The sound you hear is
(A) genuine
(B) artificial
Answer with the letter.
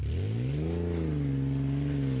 A